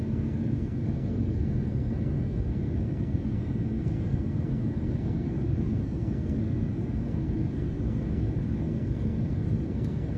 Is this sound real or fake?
fake